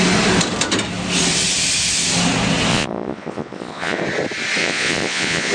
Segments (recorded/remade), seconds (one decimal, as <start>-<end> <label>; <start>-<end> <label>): 0.0-2.7 recorded; 2.7-4.0 remade; 4.0-4.6 recorded; 4.6-5.5 remade